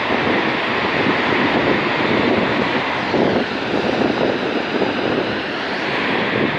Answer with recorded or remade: recorded